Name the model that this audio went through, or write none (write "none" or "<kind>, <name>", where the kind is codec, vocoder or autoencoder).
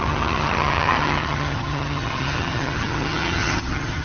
vocoder, HiFi-GAN